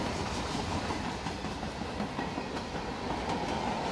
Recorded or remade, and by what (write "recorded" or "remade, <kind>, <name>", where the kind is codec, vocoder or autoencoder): recorded